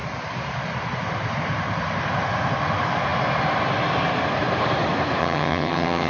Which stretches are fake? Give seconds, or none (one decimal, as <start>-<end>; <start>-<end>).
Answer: 5.2-6.1